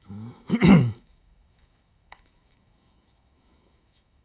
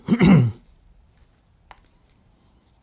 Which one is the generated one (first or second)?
first